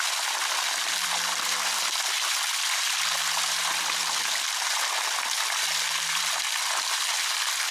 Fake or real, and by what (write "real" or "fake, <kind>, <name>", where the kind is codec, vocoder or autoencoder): real